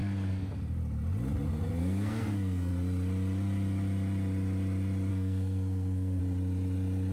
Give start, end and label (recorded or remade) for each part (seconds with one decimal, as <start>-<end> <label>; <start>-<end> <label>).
0.0-0.5 remade; 0.5-1.8 recorded; 1.8-2.7 remade; 2.7-5.1 recorded; 5.1-6.2 remade; 6.2-7.1 recorded